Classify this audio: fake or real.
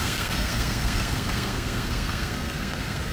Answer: fake